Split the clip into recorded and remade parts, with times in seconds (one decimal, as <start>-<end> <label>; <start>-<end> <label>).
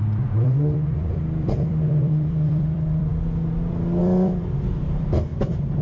0.0-3.1 remade; 3.1-4.0 recorded; 4.0-5.8 remade